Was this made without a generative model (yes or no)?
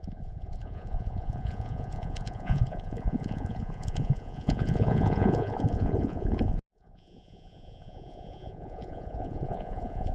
no